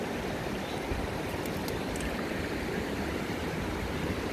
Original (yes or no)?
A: yes